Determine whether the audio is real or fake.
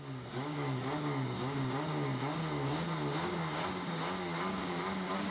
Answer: fake